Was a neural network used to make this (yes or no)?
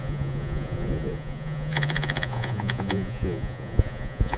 yes